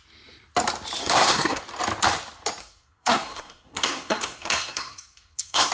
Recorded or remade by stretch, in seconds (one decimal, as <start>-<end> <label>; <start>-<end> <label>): 0.0-1.0 recorded; 1.0-1.6 remade; 1.6-2.6 recorded; 2.6-5.7 remade